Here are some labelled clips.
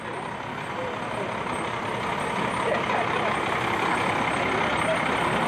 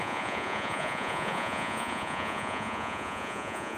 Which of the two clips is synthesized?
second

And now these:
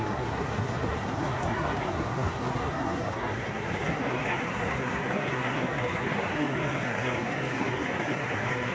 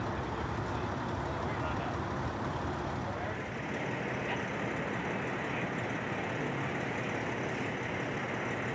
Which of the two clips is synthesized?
first